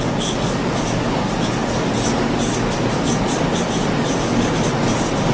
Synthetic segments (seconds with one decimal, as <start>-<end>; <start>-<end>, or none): none